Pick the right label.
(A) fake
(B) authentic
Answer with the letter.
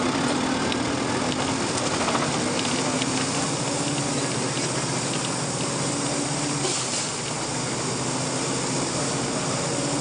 B